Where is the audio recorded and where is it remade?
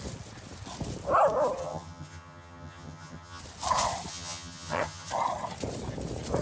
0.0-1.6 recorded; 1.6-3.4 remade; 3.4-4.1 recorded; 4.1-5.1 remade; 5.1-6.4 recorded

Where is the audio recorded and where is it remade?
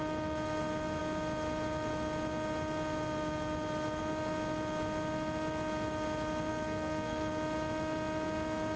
0.0-6.5 recorded; 6.5-7.3 remade; 7.3-8.8 recorded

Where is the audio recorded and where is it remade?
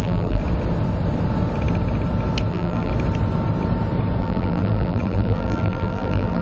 0.0-0.4 remade; 0.4-2.5 recorded; 2.5-2.9 remade; 2.9-4.2 recorded; 4.2-6.4 remade